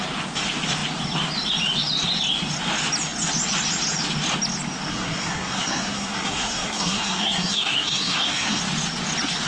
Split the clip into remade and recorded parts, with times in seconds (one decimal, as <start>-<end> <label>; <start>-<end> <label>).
0.0-4.9 recorded; 4.9-8.6 remade; 8.6-9.5 recorded